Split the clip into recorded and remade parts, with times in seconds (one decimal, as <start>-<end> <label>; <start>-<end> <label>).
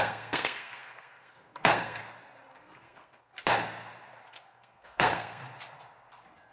0.0-2.0 remade; 2.0-2.5 recorded; 2.5-3.3 remade; 3.3-4.3 recorded; 4.3-5.4 remade; 5.4-6.5 recorded